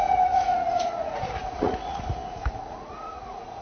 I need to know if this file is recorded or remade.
remade